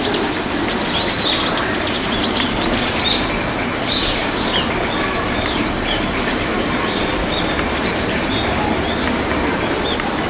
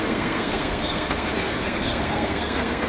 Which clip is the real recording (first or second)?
first